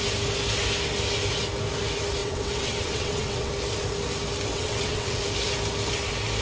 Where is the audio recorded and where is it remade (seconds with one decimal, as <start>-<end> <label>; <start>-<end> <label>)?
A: 0.0-2.2 recorded; 2.2-3.5 remade; 3.5-4.5 recorded; 4.5-5.2 remade; 5.2-6.4 recorded